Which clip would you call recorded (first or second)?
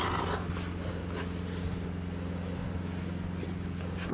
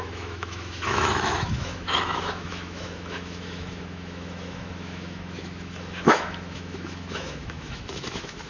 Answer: first